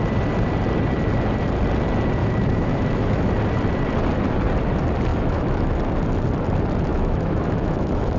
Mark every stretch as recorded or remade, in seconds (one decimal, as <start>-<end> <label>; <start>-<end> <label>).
0.0-2.2 recorded; 2.2-3.3 remade; 3.3-5.1 recorded; 5.1-5.8 remade; 5.8-6.9 recorded; 6.9-8.2 remade